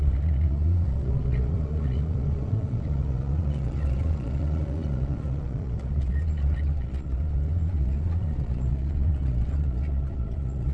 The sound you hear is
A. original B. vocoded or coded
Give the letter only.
B